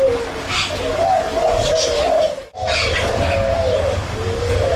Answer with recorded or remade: remade